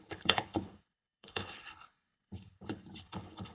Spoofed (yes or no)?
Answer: yes